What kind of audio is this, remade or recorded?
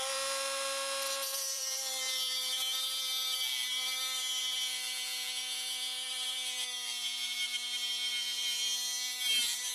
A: remade